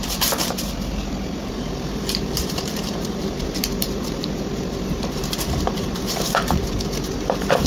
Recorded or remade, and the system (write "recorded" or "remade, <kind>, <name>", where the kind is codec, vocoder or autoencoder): remade, vocoder, BigVGAN v2